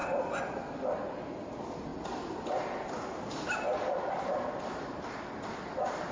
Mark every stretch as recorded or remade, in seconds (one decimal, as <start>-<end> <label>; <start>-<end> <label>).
0.0-6.1 recorded